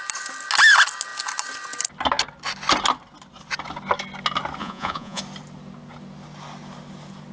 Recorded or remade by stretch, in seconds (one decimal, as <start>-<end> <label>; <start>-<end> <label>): 0.0-4.6 recorded; 4.6-5.2 remade; 5.2-7.3 recorded

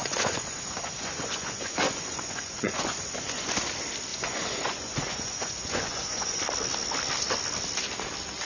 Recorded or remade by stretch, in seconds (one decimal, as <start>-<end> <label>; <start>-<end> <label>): 0.0-3.5 remade; 3.5-4.1 recorded; 4.1-6.4 remade; 6.4-8.5 recorded

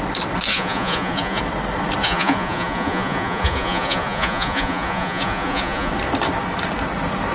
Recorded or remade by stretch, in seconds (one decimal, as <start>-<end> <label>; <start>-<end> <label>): 0.0-0.5 recorded; 0.5-1.4 remade; 1.4-2.0 recorded; 2.0-5.9 remade; 5.9-7.3 recorded

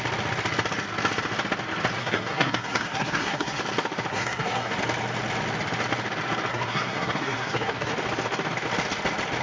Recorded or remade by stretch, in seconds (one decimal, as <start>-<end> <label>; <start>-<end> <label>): 0.0-2.0 recorded; 2.0-3.6 remade; 3.6-4.1 recorded; 4.1-4.7 remade; 4.7-6.5 recorded; 6.5-7.9 remade; 7.9-9.4 recorded

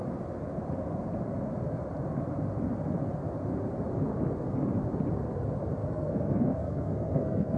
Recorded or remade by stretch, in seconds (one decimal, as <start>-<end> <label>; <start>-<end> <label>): 0.0-5.8 recorded; 5.8-7.6 remade